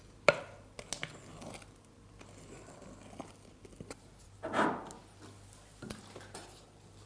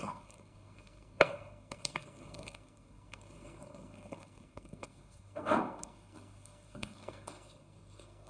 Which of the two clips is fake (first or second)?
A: second